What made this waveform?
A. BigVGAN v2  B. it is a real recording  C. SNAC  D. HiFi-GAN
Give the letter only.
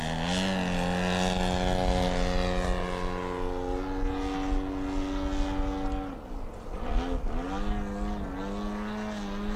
B